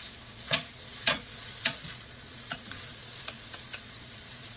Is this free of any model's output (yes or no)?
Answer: no